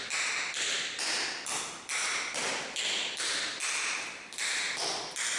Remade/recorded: remade